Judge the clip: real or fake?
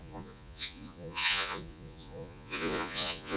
fake